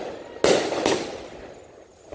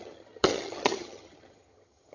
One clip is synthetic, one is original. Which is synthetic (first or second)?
second